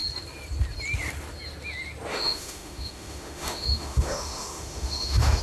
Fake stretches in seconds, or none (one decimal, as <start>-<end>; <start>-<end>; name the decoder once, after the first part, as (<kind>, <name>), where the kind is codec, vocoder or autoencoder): 2.1-5.4 (autoencoder, DAC-VAE)